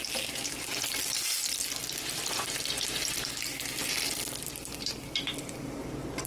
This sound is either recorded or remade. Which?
recorded